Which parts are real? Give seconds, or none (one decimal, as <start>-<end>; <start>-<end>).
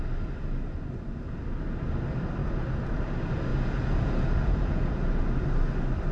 0.0-2.4; 3.0-3.5; 5.2-6.1